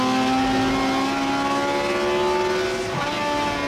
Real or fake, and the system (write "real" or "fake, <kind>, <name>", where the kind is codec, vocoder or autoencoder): real